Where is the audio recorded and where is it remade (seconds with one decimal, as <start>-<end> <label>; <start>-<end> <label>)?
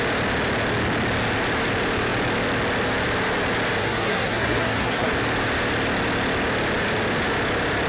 0.0-3.8 recorded; 3.8-5.1 remade; 5.1-7.9 recorded